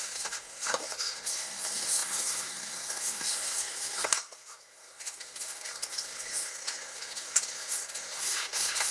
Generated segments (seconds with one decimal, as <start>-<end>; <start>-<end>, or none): 0.0-8.9